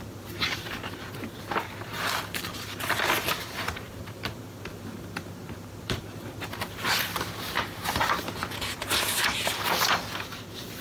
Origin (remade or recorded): remade